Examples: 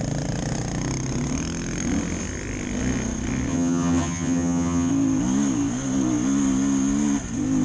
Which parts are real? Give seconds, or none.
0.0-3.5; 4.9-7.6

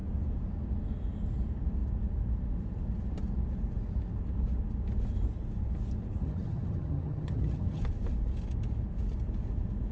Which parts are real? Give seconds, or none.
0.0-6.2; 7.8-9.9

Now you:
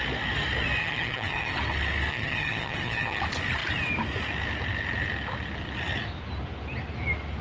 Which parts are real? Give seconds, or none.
0.0-0.8; 1.5-2.1; 3.2-7.4

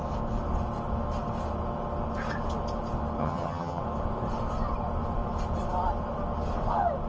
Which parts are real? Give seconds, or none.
0.0-3.2; 3.8-7.1

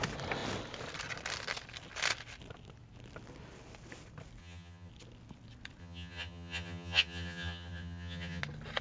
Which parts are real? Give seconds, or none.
0.0-4.4; 4.9-5.8; 8.4-8.8